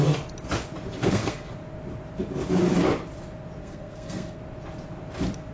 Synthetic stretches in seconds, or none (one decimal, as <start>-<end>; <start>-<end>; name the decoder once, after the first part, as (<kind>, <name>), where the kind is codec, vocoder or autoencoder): 1.0-1.5 (codec, SNAC); 3.6-4.4